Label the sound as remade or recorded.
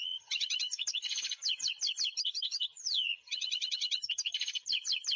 remade